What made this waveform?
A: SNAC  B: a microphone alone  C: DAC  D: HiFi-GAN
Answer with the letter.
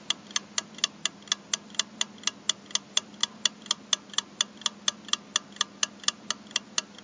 B